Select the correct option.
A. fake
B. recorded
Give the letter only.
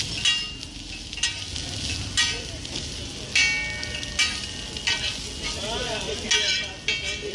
B